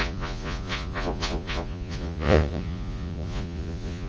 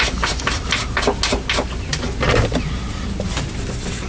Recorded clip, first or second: second